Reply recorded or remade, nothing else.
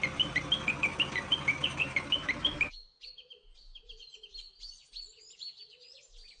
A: recorded